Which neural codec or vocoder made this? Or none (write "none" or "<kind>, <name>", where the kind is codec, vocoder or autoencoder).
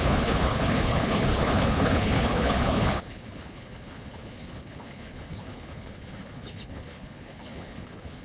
codec, HILCodec